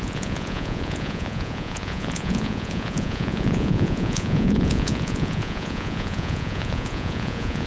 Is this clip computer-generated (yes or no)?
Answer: yes